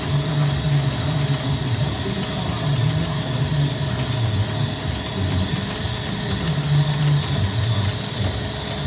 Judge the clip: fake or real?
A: real